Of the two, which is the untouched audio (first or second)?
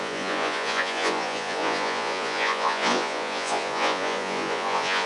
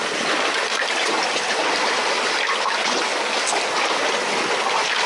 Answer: second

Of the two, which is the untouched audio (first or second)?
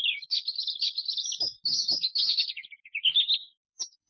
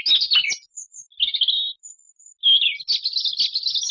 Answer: second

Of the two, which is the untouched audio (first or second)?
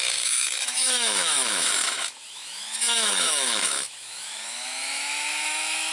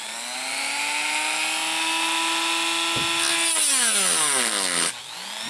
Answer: second